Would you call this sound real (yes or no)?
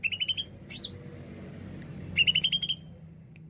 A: yes